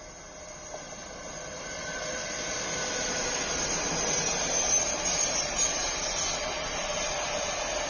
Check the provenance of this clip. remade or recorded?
recorded